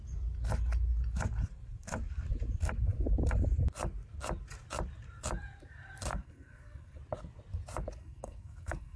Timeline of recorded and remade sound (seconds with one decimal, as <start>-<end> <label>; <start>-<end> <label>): 0.0-6.1 recorded; 6.1-7.0 remade; 7.0-8.0 recorded; 8.0-9.0 remade